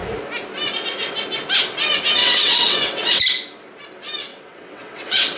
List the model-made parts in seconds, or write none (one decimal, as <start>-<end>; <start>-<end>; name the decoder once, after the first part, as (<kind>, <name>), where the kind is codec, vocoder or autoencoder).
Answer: 2.2-3.2 (vocoder, WaveNeXt); 4.3-5.4